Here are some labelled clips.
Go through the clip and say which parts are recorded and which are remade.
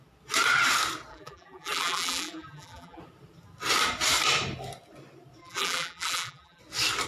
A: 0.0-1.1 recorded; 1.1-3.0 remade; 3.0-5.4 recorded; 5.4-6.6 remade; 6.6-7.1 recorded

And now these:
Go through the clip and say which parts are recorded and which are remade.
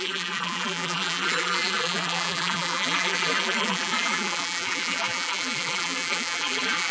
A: 0.0-6.9 remade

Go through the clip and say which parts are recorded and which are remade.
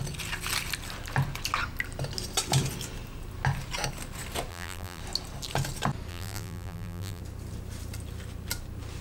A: 0.0-4.5 recorded; 4.5-5.0 remade; 5.0-6.1 recorded; 6.1-7.2 remade; 7.2-9.0 recorded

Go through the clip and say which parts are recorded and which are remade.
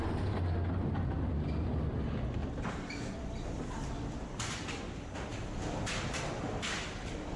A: 0.0-2.4 recorded; 2.4-3.6 remade; 3.6-5.3 recorded; 5.3-5.9 remade; 5.9-7.4 recorded